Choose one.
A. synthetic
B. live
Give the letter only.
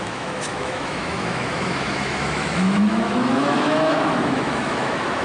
A